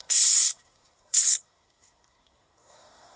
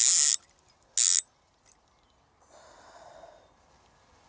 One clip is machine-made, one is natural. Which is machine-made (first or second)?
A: first